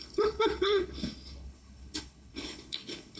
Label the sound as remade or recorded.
remade